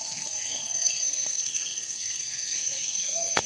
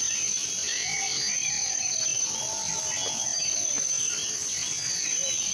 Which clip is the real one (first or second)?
second